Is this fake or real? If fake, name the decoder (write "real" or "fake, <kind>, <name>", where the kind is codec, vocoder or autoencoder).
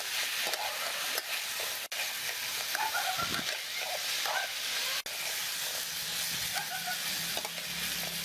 real